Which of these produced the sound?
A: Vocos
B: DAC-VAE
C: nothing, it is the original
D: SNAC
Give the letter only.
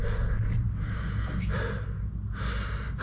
C